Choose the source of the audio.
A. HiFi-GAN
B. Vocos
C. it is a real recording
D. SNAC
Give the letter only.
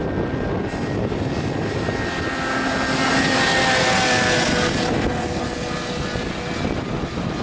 C